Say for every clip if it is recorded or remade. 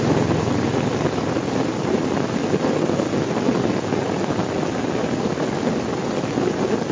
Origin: recorded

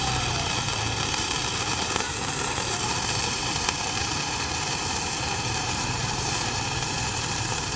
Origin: remade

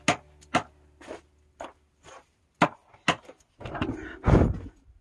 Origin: recorded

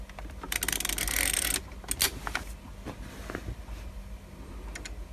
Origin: recorded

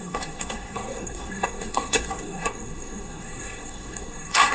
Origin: remade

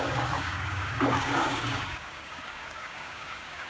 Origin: remade